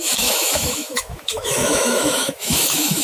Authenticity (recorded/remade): remade